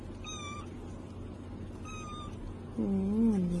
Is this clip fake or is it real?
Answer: real